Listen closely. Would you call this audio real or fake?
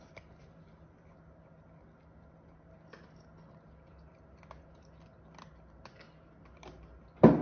real